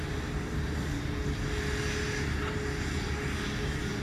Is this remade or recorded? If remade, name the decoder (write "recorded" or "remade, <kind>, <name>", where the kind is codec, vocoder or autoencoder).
recorded